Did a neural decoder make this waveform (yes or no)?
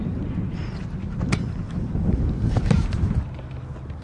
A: no